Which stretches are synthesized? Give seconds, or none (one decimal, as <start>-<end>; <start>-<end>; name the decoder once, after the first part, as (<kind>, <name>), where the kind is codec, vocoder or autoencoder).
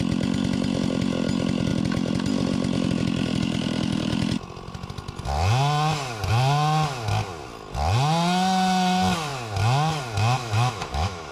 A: 10.4-11.3 (autoencoder, DAC-VAE)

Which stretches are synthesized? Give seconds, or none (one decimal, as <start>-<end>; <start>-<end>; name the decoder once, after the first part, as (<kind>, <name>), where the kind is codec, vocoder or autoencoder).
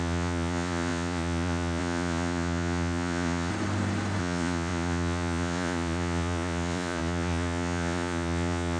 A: 0.0-3.5 (vocoder, Vocos); 4.2-8.8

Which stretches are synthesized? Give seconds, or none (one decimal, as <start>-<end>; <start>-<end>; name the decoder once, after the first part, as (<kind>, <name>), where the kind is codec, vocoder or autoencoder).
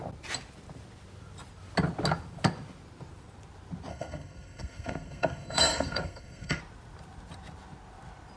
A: 3.9-6.6 (codec, SNAC)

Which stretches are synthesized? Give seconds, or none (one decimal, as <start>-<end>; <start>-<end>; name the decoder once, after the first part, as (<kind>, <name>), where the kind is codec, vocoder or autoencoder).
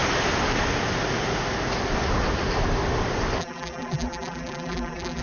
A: 3.4-5.2 (vocoder, BigVGAN v2)